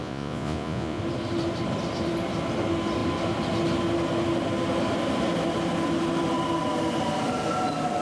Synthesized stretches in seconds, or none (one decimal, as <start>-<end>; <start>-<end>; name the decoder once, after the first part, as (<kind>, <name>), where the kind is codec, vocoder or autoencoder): 0.0-1.0 (vocoder, Vocos)